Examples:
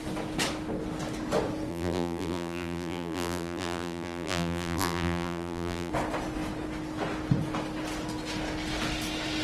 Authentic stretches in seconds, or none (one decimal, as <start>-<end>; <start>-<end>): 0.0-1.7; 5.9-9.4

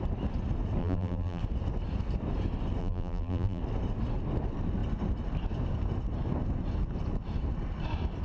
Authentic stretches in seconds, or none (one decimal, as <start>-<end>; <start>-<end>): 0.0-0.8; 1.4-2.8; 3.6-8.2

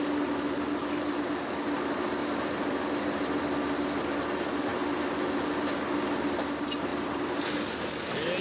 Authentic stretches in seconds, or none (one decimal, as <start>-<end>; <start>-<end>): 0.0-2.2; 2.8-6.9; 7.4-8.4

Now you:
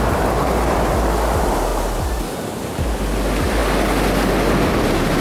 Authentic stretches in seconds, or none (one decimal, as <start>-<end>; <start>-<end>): 0.0-0.4; 0.9-1.7; 2.6-5.2